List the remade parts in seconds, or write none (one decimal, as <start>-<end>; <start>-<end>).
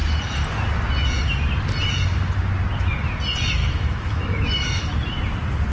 3.6-4.9